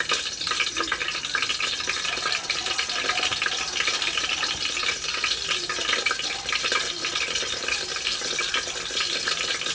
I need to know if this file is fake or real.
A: real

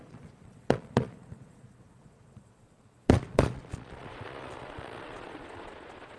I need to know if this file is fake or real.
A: fake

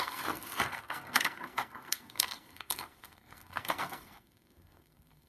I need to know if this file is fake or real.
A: fake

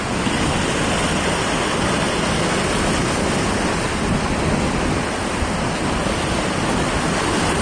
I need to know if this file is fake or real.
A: real